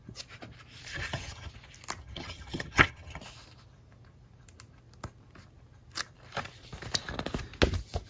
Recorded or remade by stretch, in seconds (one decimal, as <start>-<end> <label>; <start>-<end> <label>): 0.0-0.9 recorded; 0.9-1.5 remade; 1.5-2.0 recorded; 2.0-3.2 remade; 3.2-8.1 recorded